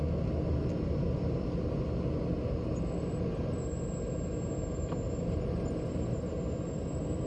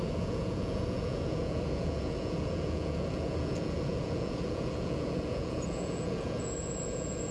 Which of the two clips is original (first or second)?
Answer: first